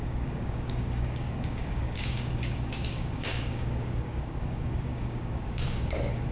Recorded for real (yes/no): no